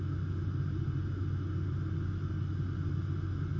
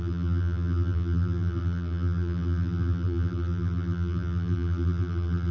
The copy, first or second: second